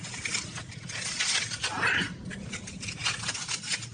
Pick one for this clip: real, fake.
real